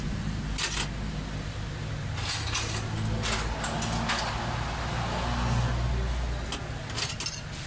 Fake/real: real